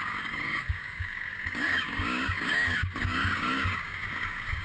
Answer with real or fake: fake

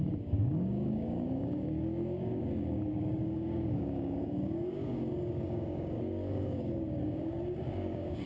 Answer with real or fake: fake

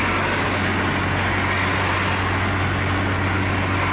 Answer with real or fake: real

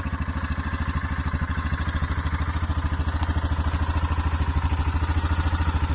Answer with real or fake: real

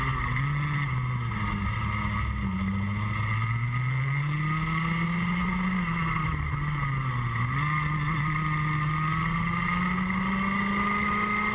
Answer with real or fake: real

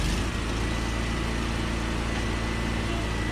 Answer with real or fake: real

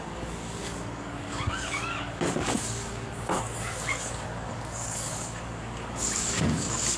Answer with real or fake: fake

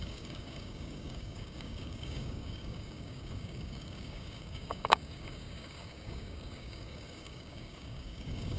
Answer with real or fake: fake